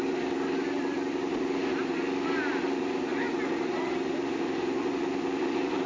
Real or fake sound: real